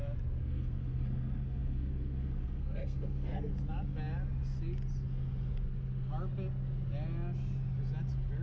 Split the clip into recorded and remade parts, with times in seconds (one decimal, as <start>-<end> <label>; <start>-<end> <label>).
0.0-0.4 recorded; 0.4-3.5 remade; 3.5-8.4 recorded